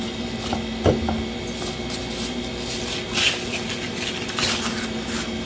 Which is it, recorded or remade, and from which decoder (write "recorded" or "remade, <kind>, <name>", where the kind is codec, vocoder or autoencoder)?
recorded